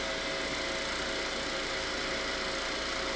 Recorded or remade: recorded